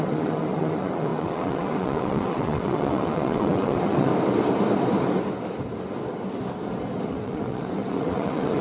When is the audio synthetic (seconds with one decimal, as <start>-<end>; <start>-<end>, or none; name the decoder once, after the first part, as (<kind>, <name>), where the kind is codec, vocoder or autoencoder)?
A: 0.0-4.1 (vocoder, WaveNeXt); 7.1-8.6